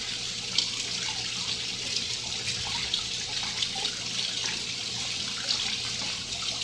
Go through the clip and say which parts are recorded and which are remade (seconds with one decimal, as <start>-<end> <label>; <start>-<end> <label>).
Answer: 0.0-6.6 recorded